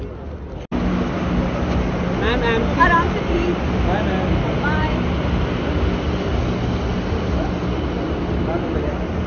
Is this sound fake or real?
real